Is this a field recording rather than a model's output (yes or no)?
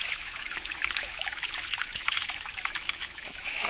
no